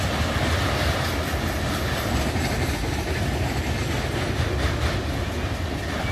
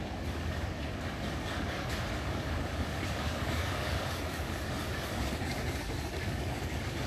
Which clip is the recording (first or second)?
first